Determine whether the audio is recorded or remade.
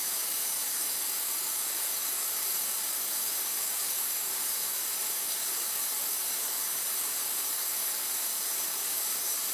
remade